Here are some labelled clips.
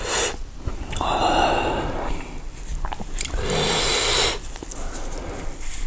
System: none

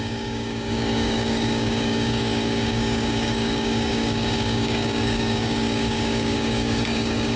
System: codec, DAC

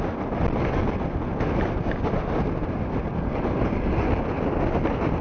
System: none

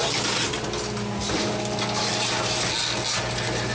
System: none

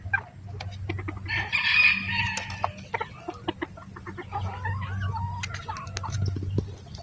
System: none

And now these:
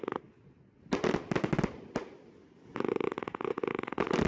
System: none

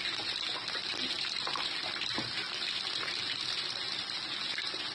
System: none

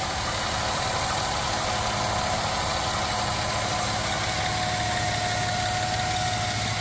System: none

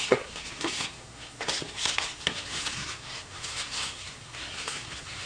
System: codec, SNAC